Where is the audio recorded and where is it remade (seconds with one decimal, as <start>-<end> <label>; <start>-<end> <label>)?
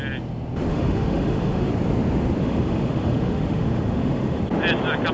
0.0-0.7 recorded; 0.7-1.7 remade; 1.7-2.4 recorded; 2.4-4.4 remade; 4.4-5.1 recorded